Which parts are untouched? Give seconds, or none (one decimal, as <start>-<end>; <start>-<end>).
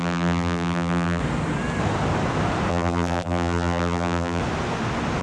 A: 1.2-2.7; 4.4-5.2